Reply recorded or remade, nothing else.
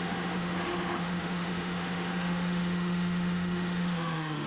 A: remade